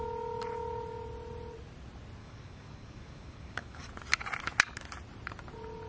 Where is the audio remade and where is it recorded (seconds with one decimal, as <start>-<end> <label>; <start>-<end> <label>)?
0.0-2.2 recorded; 2.2-3.9 remade; 3.9-5.9 recorded